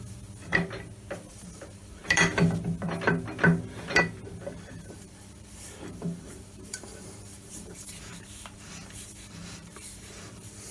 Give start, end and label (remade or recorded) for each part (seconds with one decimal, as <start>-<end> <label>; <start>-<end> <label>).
0.0-0.5 remade; 0.5-1.3 recorded; 1.3-2.0 remade; 2.0-4.8 recorded; 4.8-10.7 remade

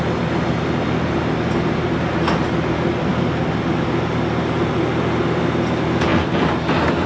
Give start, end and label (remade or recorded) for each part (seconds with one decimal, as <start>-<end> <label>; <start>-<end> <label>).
0.0-7.1 recorded